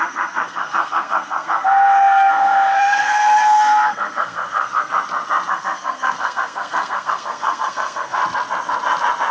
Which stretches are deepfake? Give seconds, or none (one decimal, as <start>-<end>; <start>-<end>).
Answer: 0.0-4.9; 5.5-8.2